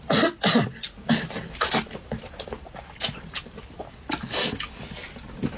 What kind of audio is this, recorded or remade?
remade